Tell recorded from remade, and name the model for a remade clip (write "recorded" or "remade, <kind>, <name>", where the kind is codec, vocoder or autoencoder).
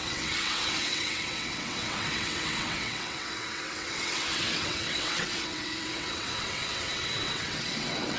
remade, vocoder, WaveNeXt